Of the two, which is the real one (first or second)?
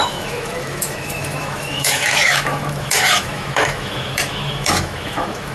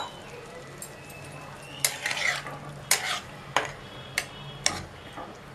second